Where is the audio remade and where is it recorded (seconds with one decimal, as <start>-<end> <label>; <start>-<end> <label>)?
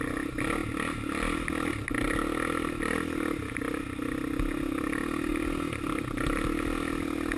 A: 0.0-7.4 recorded